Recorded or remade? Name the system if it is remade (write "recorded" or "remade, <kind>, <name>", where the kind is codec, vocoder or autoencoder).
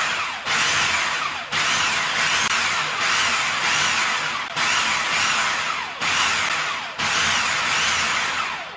recorded